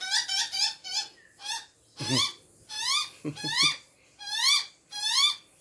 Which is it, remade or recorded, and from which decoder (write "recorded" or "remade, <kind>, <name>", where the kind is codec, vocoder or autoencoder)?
recorded